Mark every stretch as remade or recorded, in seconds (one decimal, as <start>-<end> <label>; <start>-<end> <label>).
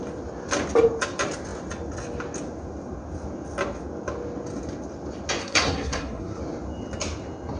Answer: 0.0-5.4 recorded; 5.4-6.4 remade; 6.4-7.6 recorded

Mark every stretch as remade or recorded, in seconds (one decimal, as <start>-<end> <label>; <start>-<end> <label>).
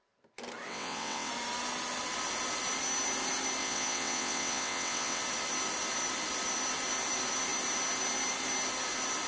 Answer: 0.0-0.7 recorded; 0.7-1.3 remade; 1.3-3.6 recorded; 3.6-5.2 remade; 5.2-9.3 recorded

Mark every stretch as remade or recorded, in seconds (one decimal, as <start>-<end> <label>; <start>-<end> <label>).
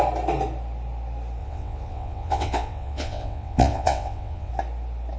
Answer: 0.0-1.4 recorded; 1.4-4.5 remade; 4.5-5.2 recorded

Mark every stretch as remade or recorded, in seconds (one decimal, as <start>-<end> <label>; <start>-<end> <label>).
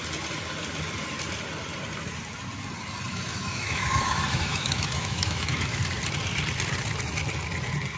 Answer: 0.0-3.1 recorded; 3.1-5.8 remade; 5.8-8.0 recorded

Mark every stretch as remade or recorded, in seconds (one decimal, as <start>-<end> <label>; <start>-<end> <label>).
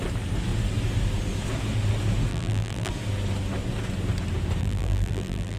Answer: 0.0-2.3 recorded; 2.3-2.9 remade; 2.9-4.6 recorded; 4.6-5.6 remade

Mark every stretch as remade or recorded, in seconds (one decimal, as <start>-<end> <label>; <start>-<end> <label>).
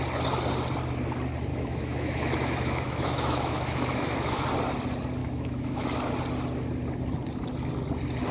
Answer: 0.0-1.5 recorded; 1.5-4.5 remade; 4.5-5.2 recorded; 5.2-6.1 remade; 6.1-8.3 recorded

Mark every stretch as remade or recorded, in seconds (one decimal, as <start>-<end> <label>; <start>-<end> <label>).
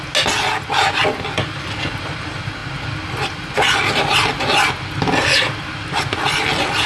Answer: 0.0-6.9 recorded